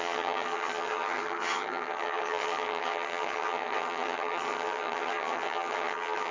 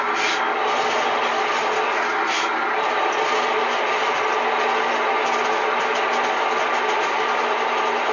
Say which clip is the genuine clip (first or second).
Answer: second